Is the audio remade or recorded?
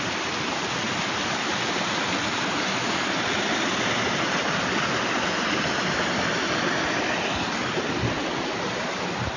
recorded